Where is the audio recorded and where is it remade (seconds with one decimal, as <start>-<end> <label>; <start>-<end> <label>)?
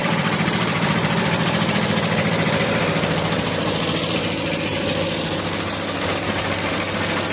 0.0-2.8 remade; 2.8-4.7 recorded; 4.7-5.4 remade; 5.4-7.3 recorded